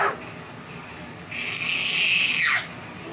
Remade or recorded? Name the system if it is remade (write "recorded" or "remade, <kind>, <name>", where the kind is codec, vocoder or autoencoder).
recorded